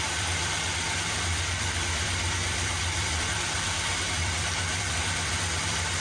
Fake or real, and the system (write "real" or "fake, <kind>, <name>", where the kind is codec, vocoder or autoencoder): fake, vocoder, BigVGAN v2